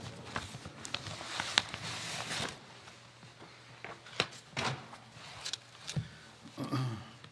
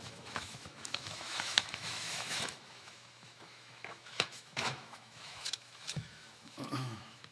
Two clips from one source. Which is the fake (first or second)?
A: second